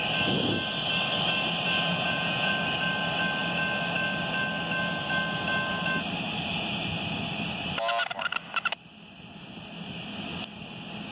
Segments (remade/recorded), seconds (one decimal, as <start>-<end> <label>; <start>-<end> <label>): 0.0-1.9 recorded; 1.9-2.5 remade; 2.5-11.1 recorded